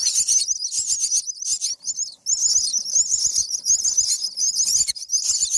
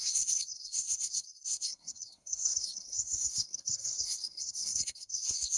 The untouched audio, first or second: first